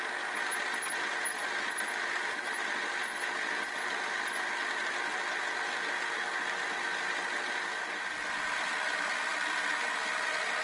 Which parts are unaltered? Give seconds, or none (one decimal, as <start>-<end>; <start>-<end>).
0.0-10.6